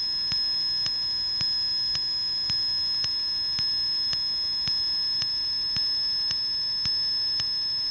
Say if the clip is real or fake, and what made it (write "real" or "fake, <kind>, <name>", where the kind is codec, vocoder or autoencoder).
real